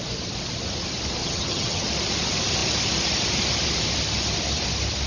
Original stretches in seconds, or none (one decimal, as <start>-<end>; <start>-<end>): 0.0-1.2; 1.9-5.1